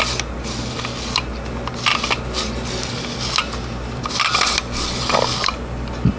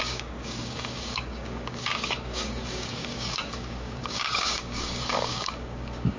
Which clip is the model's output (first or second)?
second